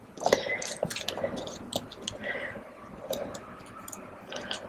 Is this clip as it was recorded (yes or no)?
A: yes